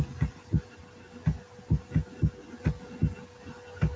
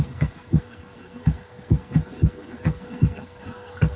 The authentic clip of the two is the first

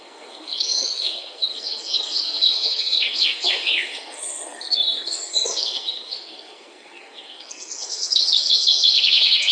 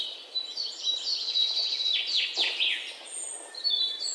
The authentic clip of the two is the second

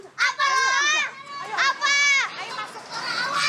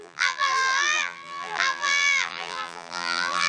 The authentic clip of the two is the first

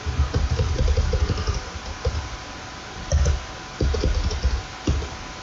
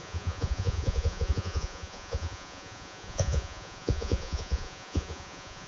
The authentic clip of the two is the first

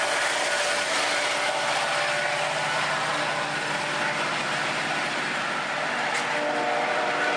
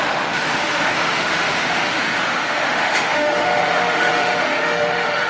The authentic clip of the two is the first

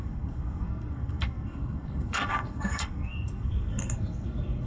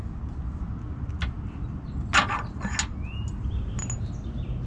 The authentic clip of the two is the second